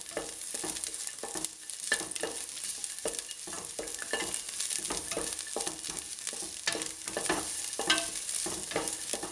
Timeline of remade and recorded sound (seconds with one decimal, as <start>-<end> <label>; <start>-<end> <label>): 0.0-9.3 recorded